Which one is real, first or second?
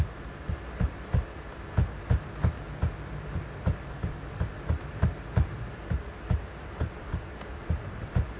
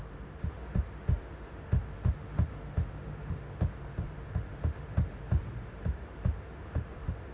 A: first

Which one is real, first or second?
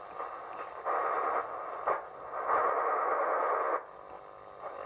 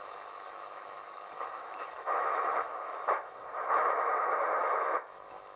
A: first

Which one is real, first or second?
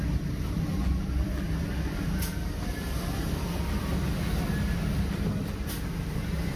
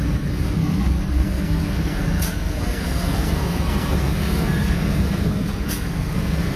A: first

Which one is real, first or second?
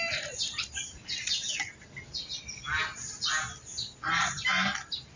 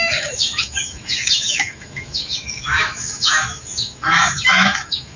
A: first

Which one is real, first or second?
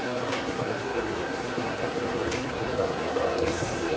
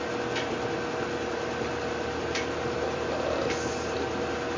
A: second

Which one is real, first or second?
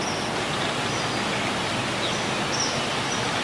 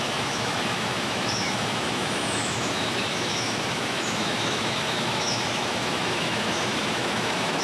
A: first